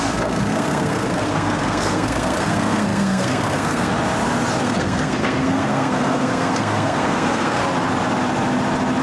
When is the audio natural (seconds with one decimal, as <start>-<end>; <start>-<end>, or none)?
3.9-4.6; 7.6-9.0